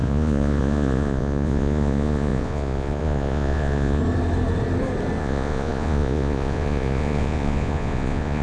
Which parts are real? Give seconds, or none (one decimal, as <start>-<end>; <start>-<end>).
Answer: 4.0-5.2